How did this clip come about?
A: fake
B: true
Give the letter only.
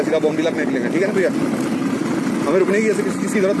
B